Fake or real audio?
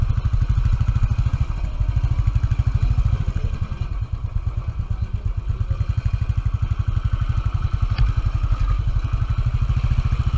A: real